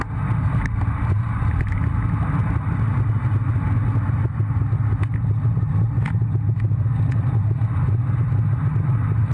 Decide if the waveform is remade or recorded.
recorded